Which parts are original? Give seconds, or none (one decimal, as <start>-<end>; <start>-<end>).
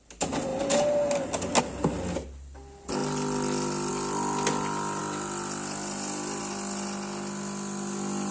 0.0-8.3